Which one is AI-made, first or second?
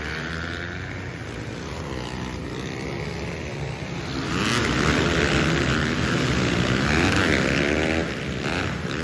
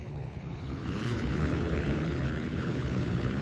second